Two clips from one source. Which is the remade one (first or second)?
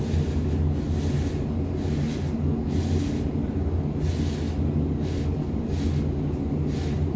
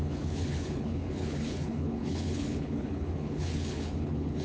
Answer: second